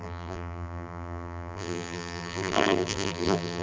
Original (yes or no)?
no